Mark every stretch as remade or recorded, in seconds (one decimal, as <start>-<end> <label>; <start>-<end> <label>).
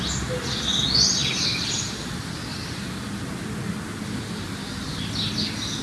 0.0-5.8 recorded